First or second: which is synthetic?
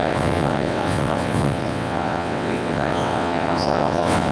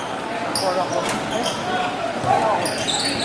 first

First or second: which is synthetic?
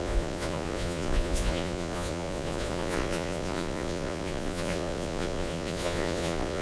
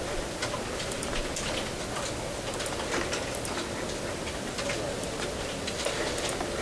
first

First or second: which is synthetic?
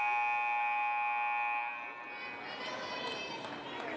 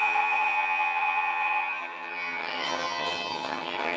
second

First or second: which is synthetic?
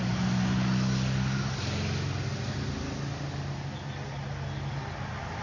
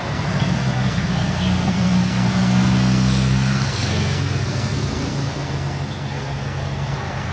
second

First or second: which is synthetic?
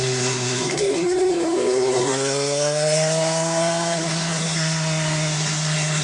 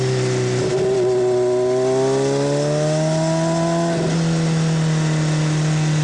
first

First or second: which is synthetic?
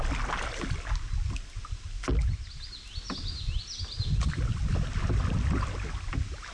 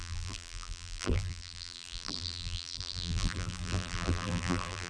second